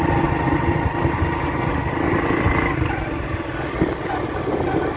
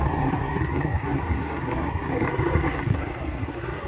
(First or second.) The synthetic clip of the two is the second